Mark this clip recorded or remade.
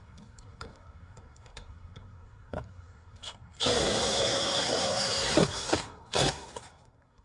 remade